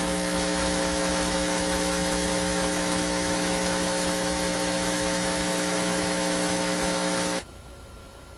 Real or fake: fake